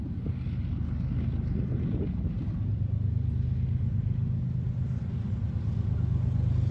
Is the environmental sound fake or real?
real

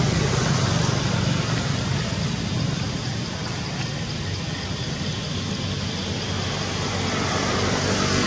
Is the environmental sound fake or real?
real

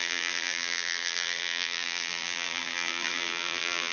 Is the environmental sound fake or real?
fake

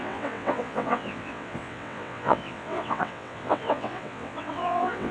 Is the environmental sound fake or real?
fake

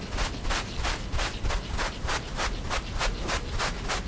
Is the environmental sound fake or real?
real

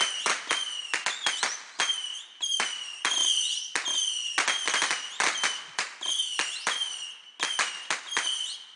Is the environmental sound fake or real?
real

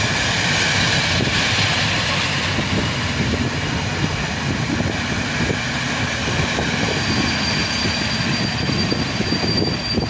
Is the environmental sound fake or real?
real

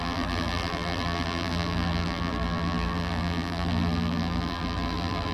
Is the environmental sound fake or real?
fake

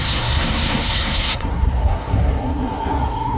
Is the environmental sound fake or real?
fake